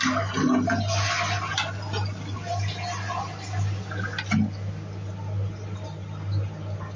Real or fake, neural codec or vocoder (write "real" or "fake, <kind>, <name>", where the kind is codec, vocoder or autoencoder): real